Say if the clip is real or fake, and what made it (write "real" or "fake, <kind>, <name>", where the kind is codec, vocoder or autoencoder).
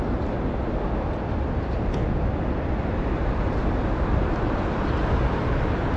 real